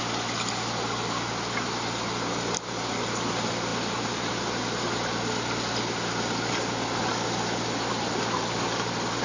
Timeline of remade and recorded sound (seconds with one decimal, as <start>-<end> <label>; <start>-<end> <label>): 0.0-9.2 recorded